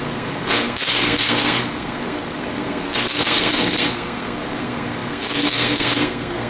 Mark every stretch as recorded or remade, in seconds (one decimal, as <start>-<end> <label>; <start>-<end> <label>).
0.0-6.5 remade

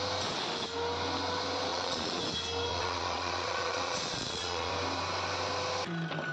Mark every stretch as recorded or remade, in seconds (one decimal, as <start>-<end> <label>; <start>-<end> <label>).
0.0-1.7 recorded; 1.7-2.2 remade; 2.2-2.7 recorded; 2.7-4.7 remade; 4.7-6.3 recorded

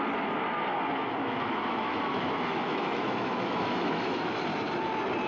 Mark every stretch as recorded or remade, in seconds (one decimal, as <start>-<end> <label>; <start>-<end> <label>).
0.0-1.2 recorded; 1.2-4.4 remade; 4.4-5.3 recorded